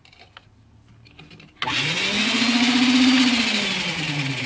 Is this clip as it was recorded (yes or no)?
yes